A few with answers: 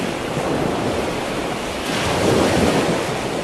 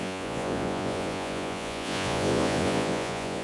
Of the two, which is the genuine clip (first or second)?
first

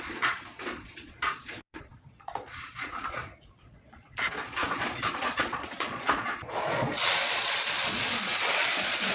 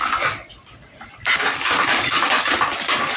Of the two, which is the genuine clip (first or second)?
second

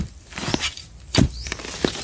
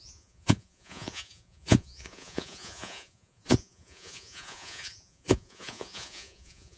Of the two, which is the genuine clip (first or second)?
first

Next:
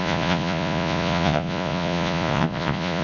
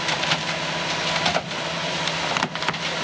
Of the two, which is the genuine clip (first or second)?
second